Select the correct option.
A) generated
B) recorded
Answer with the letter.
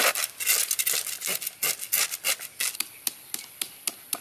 B